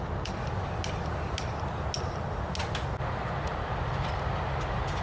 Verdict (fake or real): real